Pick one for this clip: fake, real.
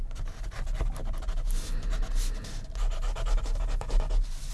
real